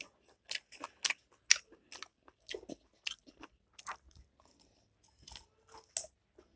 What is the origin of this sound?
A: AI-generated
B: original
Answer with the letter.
B